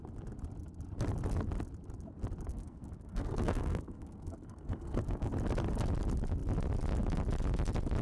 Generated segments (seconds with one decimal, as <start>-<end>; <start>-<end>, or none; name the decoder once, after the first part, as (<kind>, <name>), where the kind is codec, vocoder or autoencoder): 2.5-5.3 (codec, SNAC)